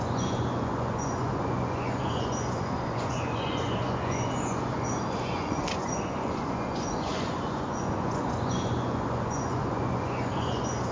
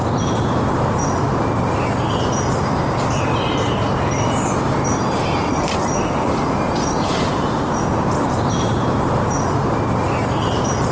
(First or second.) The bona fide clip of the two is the second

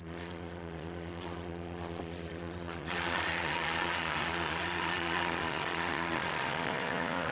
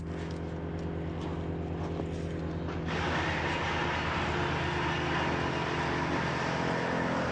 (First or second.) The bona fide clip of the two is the second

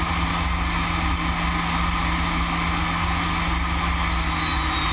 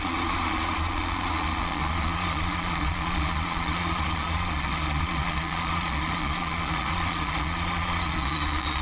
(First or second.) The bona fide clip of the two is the first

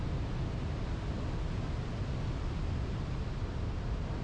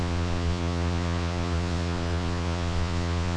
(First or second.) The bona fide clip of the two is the first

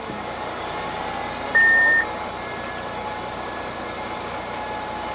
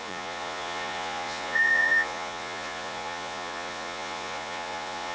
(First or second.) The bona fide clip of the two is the first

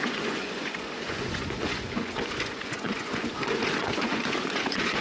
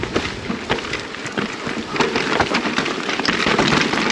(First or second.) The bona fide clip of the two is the second